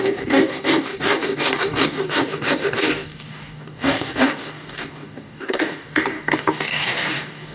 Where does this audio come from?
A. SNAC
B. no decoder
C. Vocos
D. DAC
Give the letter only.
D